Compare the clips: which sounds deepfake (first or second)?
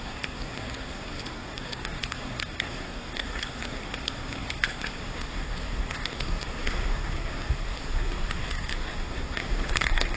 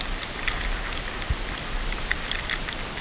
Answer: first